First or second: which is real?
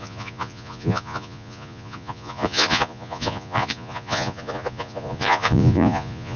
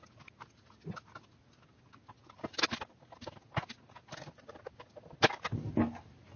second